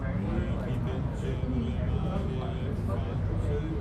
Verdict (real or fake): real